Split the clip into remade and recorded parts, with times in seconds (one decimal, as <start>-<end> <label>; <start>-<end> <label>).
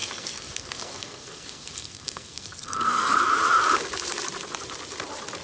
0.0-3.2 remade; 3.2-5.4 recorded